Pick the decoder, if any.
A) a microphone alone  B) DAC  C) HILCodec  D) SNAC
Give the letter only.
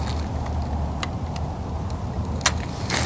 A